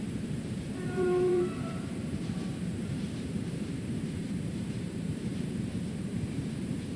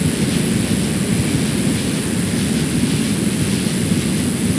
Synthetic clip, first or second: first